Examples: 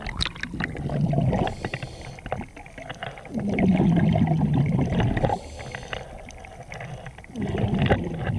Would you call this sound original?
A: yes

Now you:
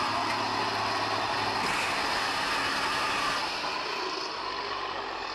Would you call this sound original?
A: yes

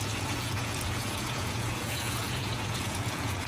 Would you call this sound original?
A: no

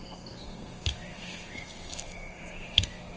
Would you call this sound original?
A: no